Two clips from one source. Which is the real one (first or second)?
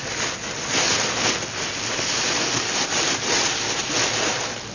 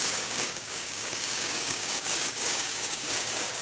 first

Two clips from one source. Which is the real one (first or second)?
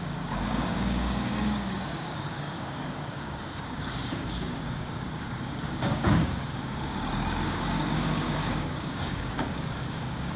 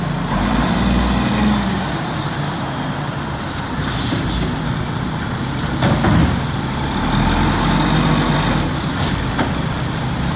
second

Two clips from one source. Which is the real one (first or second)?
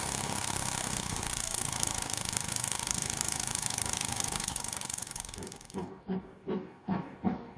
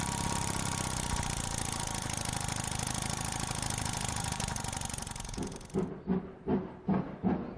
second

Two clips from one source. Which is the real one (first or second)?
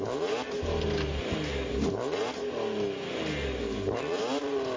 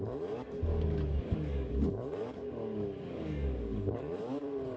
first